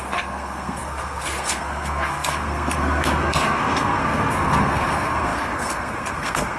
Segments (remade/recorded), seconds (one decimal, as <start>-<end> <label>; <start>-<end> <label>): 0.0-6.6 remade